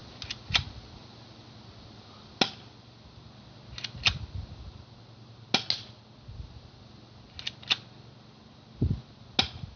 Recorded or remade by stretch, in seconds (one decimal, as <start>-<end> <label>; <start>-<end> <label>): 0.0-9.8 recorded